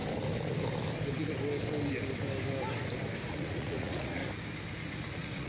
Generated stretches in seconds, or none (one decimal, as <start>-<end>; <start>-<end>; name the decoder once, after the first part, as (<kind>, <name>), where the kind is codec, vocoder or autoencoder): 3.3-4.2 (vocoder, Vocos); 5.1-5.5